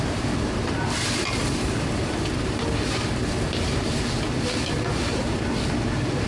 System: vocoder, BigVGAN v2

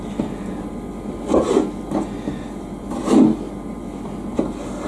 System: none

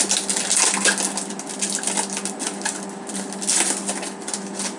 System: none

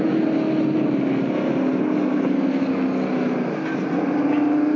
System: none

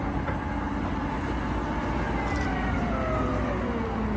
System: none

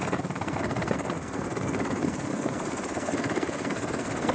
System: codec, SNAC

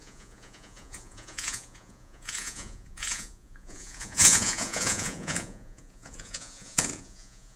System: vocoder, Vocos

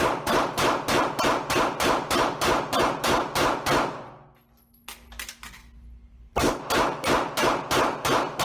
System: none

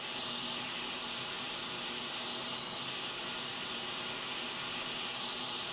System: none